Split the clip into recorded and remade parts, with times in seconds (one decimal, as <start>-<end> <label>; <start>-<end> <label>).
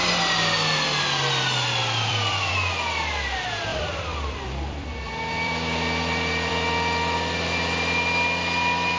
0.0-1.8 recorded; 1.8-2.5 remade; 2.5-3.7 recorded; 3.7-6.5 remade; 6.5-9.0 recorded